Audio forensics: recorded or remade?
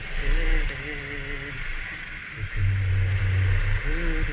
recorded